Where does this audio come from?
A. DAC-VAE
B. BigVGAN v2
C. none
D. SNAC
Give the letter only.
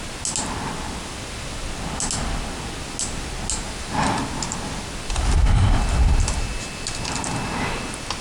C